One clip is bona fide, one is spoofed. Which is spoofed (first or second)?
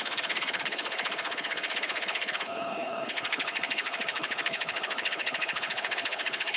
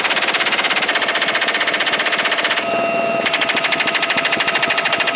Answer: first